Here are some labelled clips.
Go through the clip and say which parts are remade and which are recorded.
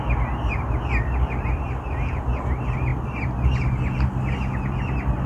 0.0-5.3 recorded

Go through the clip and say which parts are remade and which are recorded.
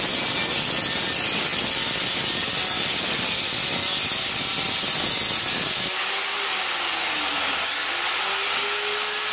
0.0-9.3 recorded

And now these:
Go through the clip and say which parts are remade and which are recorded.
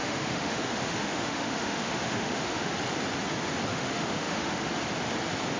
0.0-2.7 remade; 2.7-3.7 recorded; 3.7-4.7 remade; 4.7-5.6 recorded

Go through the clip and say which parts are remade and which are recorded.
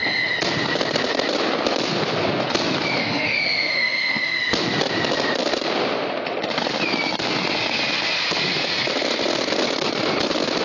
0.0-3.0 recorded; 3.0-4.4 remade; 4.4-10.6 recorded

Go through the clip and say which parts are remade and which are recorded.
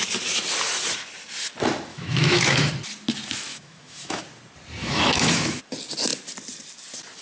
0.0-1.9 recorded; 1.9-2.7 remade; 2.7-3.5 recorded; 3.5-4.2 remade; 4.2-4.8 recorded; 4.8-5.6 remade; 5.6-7.2 recorded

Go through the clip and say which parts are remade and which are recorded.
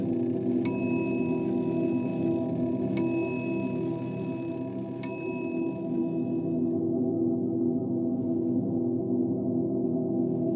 0.0-6.0 recorded; 6.0-9.0 remade; 9.0-10.6 recorded